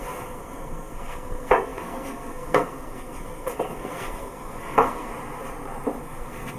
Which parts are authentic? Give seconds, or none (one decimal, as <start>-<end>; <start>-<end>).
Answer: 5.1-6.0